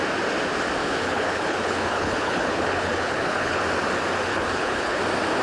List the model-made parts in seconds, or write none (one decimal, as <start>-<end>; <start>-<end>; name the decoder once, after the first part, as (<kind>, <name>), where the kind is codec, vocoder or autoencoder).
0.8-3.6 (codec, HILCodec); 4.3-5.0